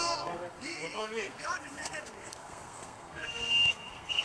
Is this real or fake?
fake